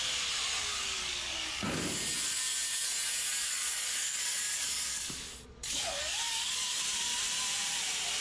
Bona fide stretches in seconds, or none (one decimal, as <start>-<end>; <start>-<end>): 0.0-0.7; 1.5-3.4; 6.8-8.2